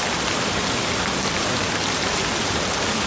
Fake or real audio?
real